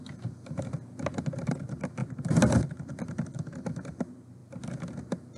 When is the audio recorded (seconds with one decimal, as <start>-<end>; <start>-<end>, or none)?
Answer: 0.0-2.0; 3.6-5.4